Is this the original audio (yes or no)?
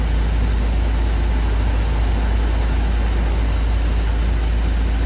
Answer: yes